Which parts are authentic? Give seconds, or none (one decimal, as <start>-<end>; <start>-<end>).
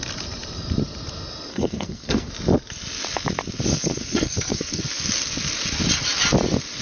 0.0-1.5; 2.3-3.7; 4.8-6.8